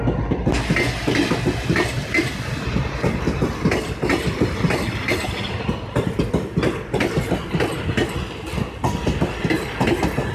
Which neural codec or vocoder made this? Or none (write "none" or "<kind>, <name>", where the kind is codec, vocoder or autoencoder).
none